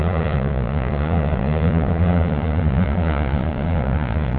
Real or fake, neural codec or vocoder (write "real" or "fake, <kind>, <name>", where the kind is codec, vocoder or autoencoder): fake, vocoder, Vocos